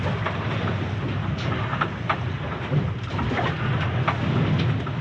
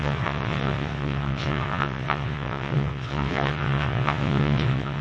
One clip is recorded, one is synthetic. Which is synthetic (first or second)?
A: second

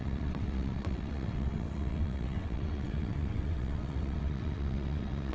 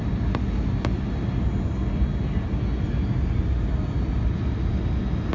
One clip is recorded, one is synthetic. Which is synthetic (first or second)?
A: first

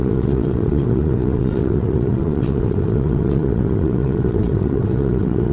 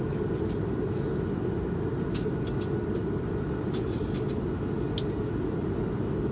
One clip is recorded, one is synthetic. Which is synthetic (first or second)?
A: first